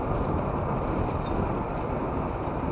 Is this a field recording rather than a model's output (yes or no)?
yes